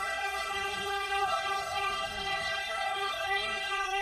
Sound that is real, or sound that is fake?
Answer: fake